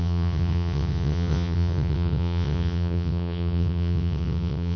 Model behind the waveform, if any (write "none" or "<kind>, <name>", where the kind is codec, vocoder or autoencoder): vocoder, WaveNeXt